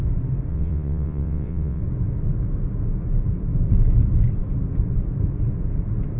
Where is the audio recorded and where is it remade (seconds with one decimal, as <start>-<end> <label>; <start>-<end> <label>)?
0.0-0.5 recorded; 0.5-1.8 remade; 1.8-6.2 recorded